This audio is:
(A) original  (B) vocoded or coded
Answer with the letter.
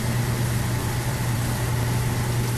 A